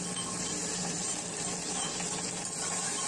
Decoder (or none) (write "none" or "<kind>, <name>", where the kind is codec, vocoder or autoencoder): none